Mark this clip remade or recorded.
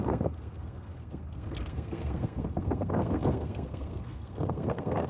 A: remade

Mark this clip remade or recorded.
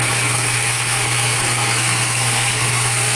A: remade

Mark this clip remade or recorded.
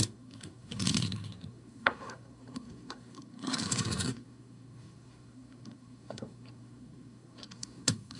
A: remade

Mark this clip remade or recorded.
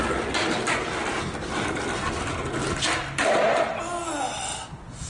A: recorded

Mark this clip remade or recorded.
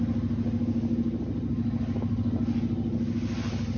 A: recorded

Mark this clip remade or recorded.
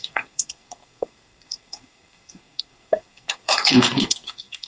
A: remade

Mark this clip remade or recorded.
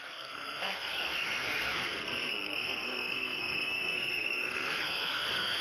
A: remade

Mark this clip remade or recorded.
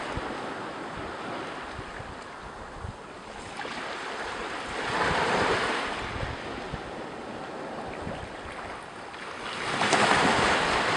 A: recorded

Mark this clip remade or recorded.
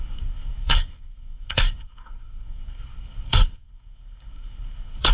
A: remade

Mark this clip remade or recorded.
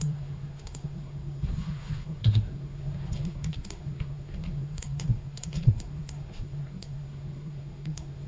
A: remade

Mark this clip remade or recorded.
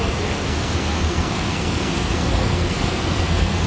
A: remade